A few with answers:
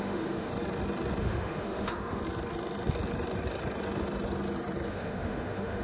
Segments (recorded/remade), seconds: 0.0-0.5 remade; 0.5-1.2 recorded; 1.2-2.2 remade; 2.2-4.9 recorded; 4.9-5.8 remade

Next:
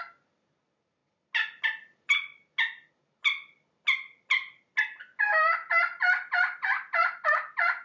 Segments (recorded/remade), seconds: 0.0-7.8 recorded

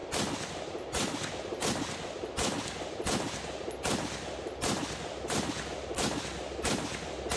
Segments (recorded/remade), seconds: 0.0-7.4 recorded

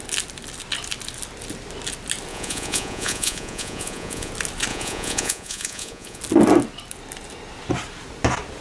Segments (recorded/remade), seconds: 0.0-2.3 recorded; 2.3-4.3 remade; 4.3-4.7 recorded; 4.7-6.2 remade; 6.2-8.6 recorded

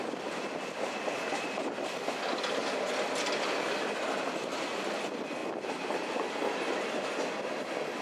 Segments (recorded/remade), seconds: 0.0-8.0 recorded

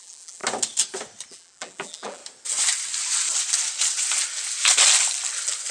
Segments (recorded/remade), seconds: 0.0-0.4 remade; 0.4-1.3 recorded; 1.3-2.2 remade; 2.2-5.7 recorded

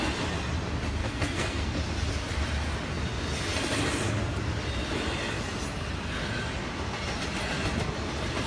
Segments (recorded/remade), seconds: 0.0-1.0 recorded; 1.0-1.8 remade; 1.8-8.5 recorded

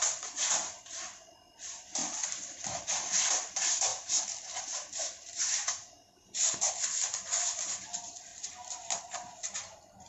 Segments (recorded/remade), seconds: 0.0-3.9 remade; 3.9-4.6 recorded; 4.6-8.3 remade; 8.3-9.0 recorded; 9.0-10.1 remade